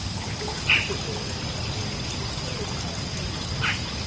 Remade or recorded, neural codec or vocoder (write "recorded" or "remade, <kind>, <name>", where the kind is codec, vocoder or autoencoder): recorded